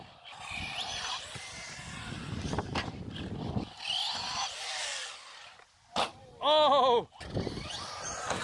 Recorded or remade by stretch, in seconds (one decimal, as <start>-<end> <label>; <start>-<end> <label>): 0.0-8.4 recorded